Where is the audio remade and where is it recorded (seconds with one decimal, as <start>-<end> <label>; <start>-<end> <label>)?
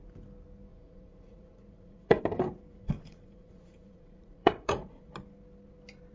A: 0.0-0.7 recorded; 0.7-2.2 remade; 2.2-2.7 recorded; 2.7-5.1 remade; 5.1-6.1 recorded